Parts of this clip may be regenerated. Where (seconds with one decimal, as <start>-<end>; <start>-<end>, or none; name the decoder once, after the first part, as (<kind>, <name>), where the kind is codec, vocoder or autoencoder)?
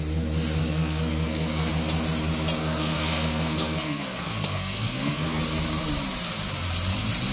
0.6-1.7 (codec, SNAC); 2.6-5.4